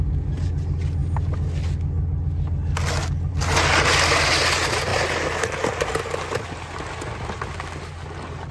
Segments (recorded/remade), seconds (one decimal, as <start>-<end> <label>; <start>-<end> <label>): 0.0-8.5 recorded